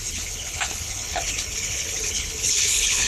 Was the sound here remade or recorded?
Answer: remade